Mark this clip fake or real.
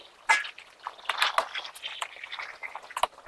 real